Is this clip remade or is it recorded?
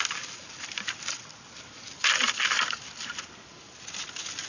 recorded